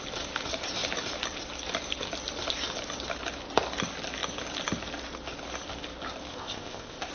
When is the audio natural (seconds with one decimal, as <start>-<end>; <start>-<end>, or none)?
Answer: 0.0-6.3